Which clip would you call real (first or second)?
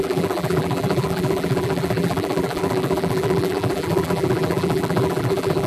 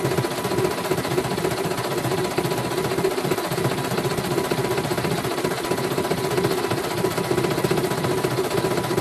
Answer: second